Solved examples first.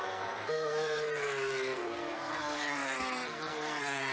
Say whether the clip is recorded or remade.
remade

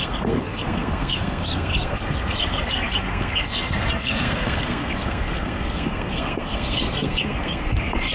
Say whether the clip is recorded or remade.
remade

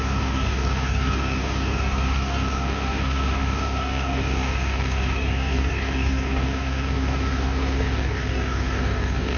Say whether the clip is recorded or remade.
remade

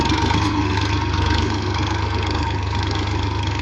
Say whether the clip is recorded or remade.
remade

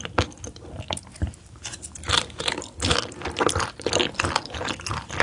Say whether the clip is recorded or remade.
recorded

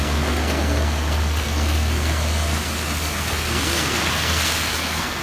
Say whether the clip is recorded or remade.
remade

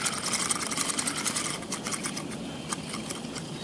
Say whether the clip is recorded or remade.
recorded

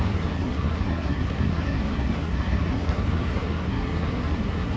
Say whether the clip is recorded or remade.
remade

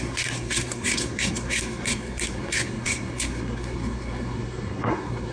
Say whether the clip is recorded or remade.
remade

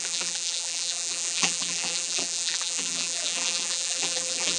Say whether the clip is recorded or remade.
remade